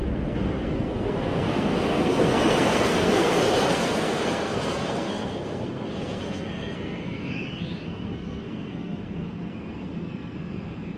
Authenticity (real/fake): fake